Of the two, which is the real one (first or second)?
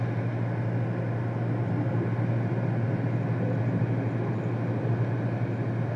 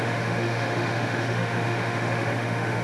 first